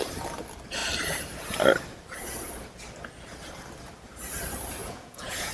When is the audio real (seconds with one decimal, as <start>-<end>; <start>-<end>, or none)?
0.0-4.8